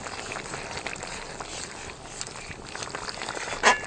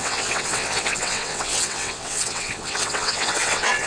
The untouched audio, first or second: first